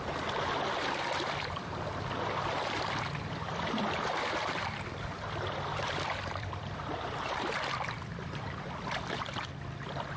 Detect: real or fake fake